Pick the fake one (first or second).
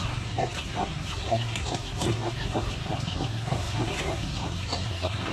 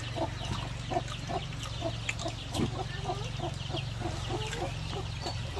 first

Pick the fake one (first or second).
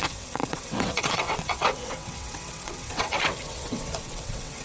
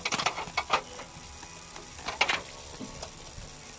first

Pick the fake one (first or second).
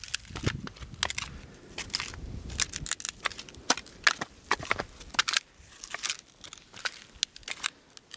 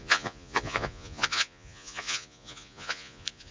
second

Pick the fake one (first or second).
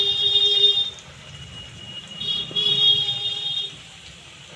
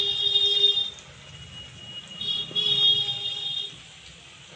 first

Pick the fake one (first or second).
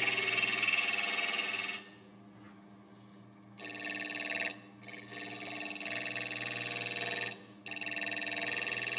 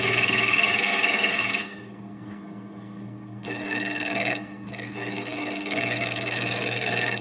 second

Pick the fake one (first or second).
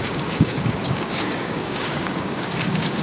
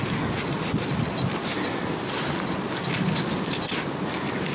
first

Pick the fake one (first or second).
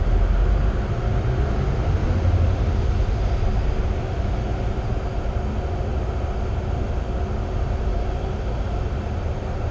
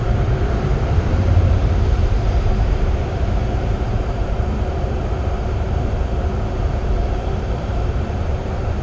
second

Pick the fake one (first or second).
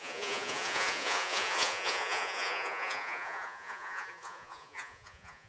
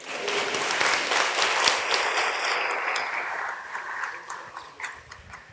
first